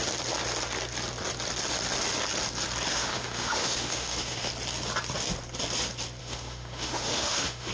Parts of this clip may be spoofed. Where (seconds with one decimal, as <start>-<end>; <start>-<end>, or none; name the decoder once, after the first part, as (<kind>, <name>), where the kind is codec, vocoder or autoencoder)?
2.9-4.5 (autoencoder, DAC-VAE); 6.2-7.7